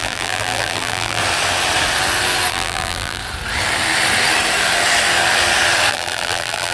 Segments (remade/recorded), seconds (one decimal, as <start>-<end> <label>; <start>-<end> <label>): 0.0-1.2 remade; 1.2-2.5 recorded; 2.5-3.2 remade; 3.2-5.9 recorded; 5.9-6.7 remade